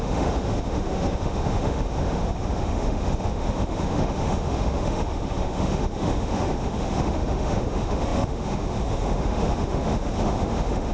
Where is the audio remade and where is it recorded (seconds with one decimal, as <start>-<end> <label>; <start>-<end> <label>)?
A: 0.0-10.9 remade